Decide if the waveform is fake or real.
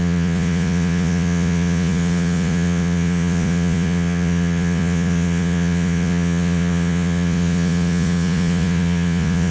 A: fake